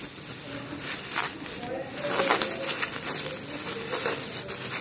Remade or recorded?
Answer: recorded